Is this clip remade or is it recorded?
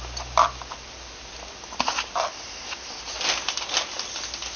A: recorded